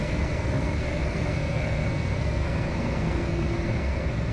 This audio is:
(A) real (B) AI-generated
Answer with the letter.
B